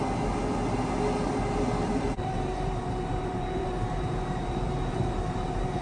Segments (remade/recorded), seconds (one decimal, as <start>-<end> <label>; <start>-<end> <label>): 0.0-1.9 recorded; 1.9-5.8 remade